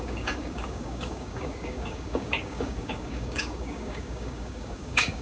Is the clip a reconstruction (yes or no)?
yes